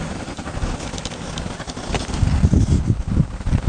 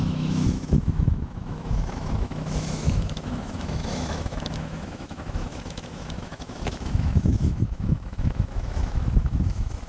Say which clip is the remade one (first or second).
second